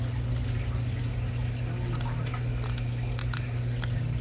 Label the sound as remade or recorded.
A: recorded